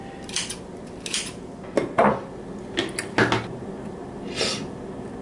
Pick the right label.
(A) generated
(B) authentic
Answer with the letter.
B